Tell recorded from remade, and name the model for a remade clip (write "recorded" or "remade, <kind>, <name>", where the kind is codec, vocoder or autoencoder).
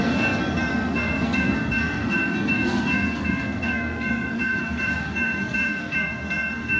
remade, codec, SNAC